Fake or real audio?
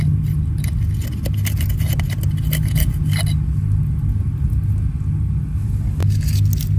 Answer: real